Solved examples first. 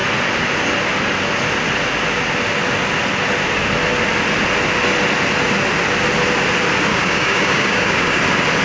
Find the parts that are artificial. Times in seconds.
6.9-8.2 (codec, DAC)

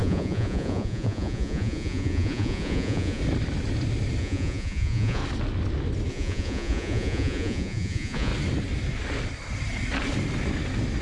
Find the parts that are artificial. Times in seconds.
0.0-3.2 (vocoder, Vocos); 4.2-5.2; 6.1-8.3

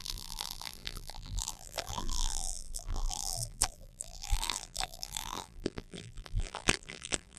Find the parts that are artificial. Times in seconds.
0.0-7.4 (vocoder, BigVGAN v2)

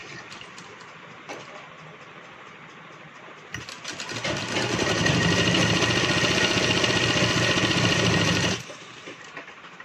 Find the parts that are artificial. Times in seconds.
4.8-5.6 (vocoder, BigVGAN v2); 7.7-9.8

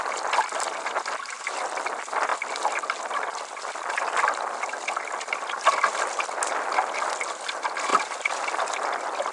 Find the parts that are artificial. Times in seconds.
none